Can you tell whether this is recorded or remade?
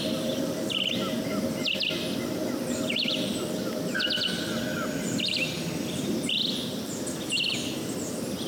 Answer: remade